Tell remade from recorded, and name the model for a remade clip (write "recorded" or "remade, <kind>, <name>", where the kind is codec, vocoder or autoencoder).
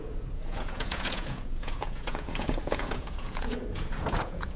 remade, vocoder, Vocos